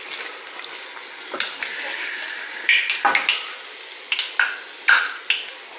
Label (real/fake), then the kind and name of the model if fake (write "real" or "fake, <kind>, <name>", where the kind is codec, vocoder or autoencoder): real